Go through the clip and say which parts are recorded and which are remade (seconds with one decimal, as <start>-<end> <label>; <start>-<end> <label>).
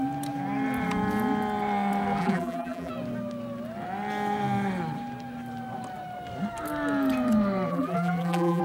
0.0-2.2 recorded; 2.2-2.9 remade; 2.9-7.7 recorded; 7.7-8.6 remade